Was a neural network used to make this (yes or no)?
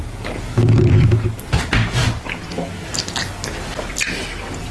no